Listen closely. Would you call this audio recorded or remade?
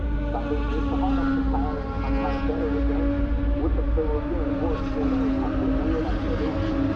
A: recorded